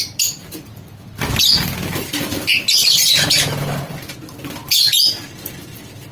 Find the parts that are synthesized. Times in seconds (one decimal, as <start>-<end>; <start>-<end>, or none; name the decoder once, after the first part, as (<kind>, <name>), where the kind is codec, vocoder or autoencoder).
2.3-3.1 (vocoder, BigVGAN v2)